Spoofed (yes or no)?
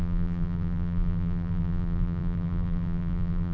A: yes